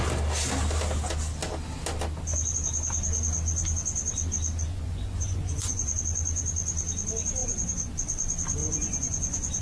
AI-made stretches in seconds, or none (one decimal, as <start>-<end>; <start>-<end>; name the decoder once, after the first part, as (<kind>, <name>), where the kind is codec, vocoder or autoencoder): 4.7-6.0 (vocoder, Vocos); 7.4-7.9; 8.6-9.6

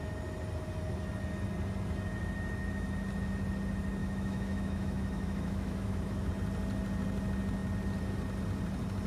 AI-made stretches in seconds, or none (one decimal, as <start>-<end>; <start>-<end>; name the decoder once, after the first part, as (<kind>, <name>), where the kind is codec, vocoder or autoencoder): 4.0-6.3 (autoencoder, DAC-VAE)

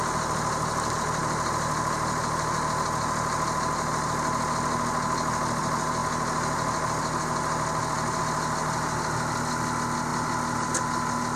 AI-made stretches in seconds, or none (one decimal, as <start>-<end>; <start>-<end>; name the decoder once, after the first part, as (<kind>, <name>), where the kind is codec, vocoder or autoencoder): none

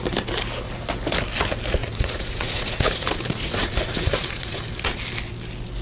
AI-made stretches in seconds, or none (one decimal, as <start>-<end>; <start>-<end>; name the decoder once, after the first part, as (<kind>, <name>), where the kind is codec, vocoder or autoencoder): 1.8-4.6 (vocoder, Vocos)

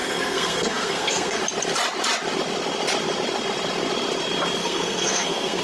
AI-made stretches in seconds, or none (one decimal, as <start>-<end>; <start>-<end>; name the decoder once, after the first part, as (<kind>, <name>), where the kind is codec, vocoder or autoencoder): 0.0-1.4 (codec, SNAC); 4.6-5.6